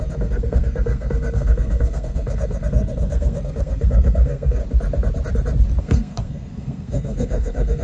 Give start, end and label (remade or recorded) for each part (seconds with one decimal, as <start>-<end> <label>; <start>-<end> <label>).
0.0-4.6 remade; 4.6-5.8 recorded; 5.8-7.8 remade